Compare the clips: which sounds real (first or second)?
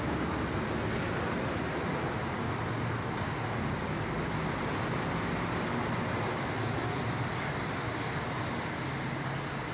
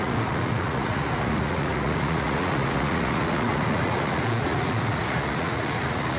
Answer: first